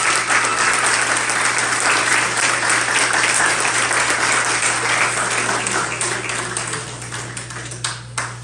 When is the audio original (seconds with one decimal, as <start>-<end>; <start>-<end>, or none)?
0.0-8.4